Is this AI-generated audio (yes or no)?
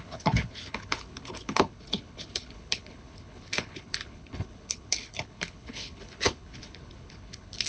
yes